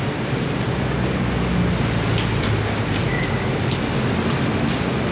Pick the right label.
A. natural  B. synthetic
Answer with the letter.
A